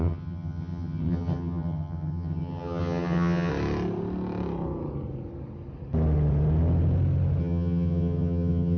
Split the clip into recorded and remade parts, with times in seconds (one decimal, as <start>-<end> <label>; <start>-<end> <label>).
0.0-3.5 remade; 3.5-7.4 recorded; 7.4-8.8 remade